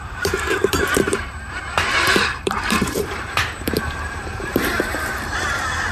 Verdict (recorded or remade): remade